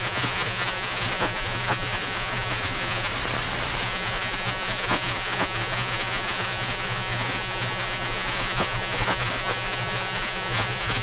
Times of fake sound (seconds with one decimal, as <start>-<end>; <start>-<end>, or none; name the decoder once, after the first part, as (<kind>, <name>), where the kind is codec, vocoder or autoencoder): 0.0-3.1 (vocoder, Vocos); 3.8-11.0